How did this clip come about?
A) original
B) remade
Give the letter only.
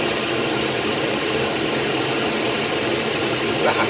A